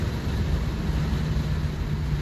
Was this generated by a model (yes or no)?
no